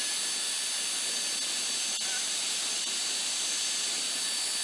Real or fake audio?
real